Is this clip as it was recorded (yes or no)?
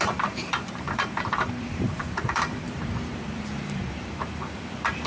no